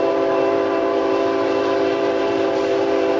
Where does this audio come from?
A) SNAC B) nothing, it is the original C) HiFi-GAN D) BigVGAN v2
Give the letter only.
D